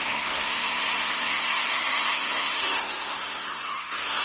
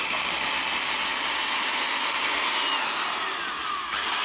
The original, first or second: second